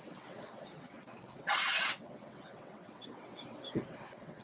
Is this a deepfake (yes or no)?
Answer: yes